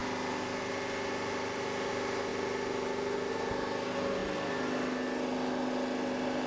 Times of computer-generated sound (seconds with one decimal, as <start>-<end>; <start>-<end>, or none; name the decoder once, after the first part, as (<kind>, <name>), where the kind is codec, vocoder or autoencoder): none